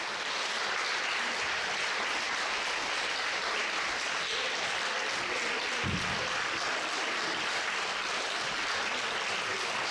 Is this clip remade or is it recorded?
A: remade